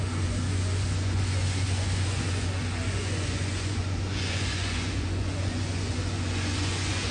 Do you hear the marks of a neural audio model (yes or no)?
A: yes